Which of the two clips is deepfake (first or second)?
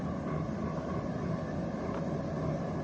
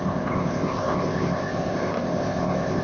second